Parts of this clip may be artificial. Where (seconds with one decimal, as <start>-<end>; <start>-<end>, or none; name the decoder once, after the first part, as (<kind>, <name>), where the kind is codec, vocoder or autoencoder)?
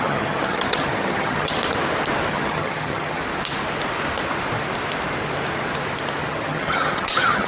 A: 0.0-1.6 (vocoder, HiFi-GAN); 2.3-3.2; 6.3-7.5